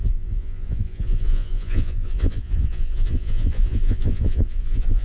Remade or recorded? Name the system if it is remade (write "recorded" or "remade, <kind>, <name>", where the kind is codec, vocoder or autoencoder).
remade, vocoder, Vocos